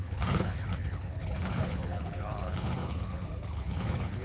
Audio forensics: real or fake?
fake